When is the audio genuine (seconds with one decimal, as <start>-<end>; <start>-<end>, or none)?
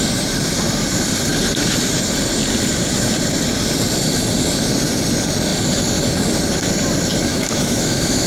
0.0-7.3